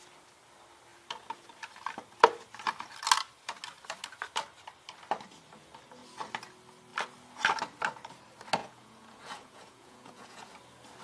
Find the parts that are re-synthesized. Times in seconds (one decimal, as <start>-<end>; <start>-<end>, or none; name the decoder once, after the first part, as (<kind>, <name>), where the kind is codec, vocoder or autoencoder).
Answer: 8.6-10.5 (vocoder, Vocos)

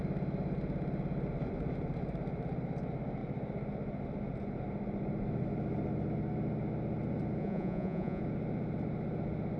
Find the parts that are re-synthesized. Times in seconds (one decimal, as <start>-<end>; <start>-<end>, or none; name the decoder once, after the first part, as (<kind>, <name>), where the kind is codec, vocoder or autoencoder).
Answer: 7.4-8.2 (vocoder, Vocos)

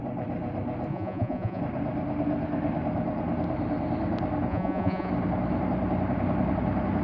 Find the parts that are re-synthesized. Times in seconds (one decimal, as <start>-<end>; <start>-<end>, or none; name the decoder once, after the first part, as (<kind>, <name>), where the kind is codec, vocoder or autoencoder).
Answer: 0.9-1.6 (vocoder, Vocos); 4.5-5.1

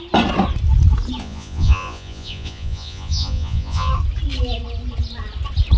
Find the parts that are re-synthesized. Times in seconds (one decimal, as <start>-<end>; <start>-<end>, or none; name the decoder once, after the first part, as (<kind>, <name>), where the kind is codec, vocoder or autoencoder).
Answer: 1.2-3.9 (vocoder, Vocos)

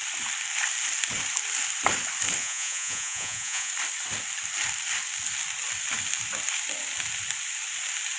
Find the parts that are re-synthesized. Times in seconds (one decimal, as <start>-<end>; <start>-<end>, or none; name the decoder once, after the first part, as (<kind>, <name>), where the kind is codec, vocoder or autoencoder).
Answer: 2.4-3.7 (vocoder, Vocos)